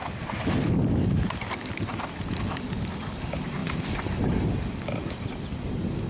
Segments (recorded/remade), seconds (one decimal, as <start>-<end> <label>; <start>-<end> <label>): 0.0-6.1 recorded